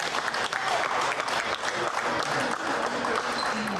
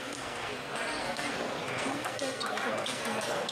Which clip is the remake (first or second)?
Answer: second